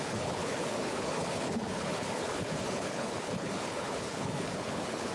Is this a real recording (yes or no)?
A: no